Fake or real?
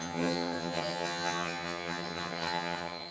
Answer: fake